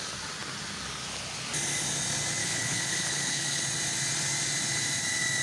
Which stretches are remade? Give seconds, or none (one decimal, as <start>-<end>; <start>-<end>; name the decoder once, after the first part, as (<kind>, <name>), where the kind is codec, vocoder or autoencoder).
2.4-3.6 (codec, HILCodec)